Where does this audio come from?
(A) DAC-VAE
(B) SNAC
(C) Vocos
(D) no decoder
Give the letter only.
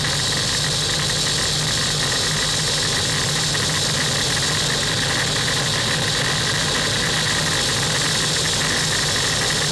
D